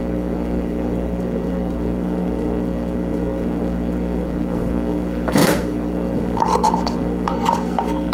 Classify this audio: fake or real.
fake